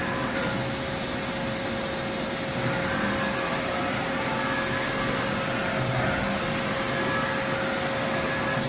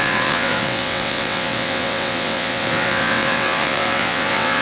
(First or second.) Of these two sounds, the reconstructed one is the second